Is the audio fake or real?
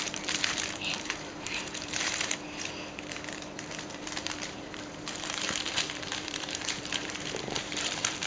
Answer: fake